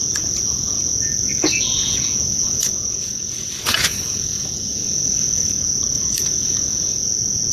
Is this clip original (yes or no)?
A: no